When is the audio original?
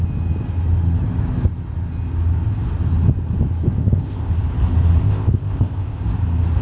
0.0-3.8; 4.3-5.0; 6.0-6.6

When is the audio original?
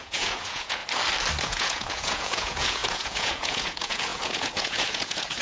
0.8-1.4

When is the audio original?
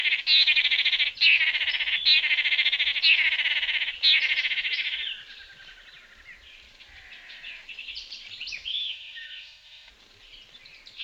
0.0-8.7; 9.9-11.0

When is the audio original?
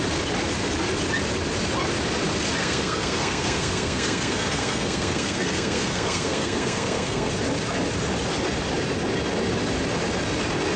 0.0-2.6; 7.3-10.8